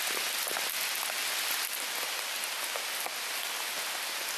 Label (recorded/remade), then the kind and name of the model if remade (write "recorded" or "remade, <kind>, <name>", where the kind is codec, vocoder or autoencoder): recorded